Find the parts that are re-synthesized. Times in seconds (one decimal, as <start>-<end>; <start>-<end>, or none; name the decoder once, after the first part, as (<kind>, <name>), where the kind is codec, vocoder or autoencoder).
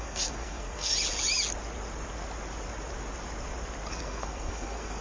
0.0-0.9 (codec, SNAC); 3.9-5.0